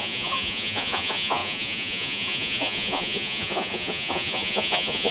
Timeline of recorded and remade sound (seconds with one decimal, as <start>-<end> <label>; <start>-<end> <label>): 0.0-5.1 remade